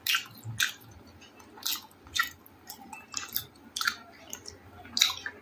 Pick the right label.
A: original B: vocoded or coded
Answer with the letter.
A